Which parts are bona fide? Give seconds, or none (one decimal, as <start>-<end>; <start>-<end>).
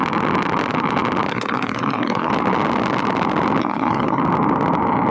0.0-1.3; 2.3-3.6; 4.2-5.1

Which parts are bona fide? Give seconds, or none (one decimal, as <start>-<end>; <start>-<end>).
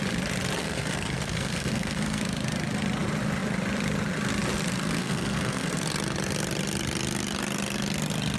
0.0-0.6; 2.2-5.0; 5.7-8.4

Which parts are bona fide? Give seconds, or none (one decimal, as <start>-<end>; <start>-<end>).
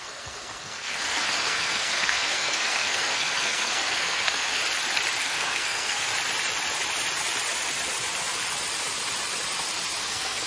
4.6-5.2; 6.1-10.0